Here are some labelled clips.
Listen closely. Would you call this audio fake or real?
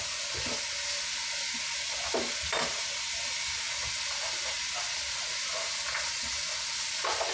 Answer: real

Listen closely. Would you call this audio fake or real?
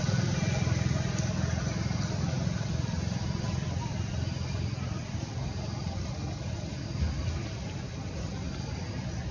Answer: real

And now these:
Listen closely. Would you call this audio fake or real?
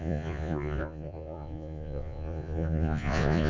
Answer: fake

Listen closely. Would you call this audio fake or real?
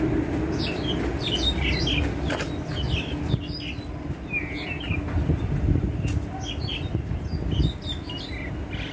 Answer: real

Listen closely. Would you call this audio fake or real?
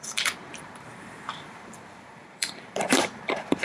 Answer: fake